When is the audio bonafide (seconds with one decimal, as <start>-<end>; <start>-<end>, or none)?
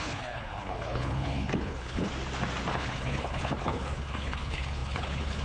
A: 2.1-2.7